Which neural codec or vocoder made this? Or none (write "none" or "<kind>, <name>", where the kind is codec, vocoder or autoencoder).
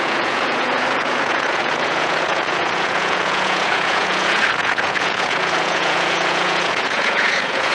vocoder, Vocos